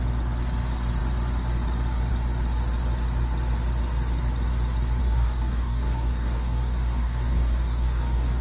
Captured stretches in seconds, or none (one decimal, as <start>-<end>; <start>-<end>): 0.0-5.0